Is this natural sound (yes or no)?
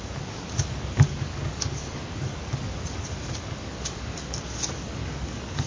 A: no